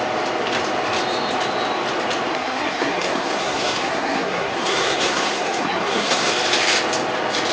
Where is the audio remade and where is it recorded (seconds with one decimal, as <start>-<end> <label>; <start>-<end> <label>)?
0.0-2.3 recorded; 2.3-6.3 remade; 6.3-7.5 recorded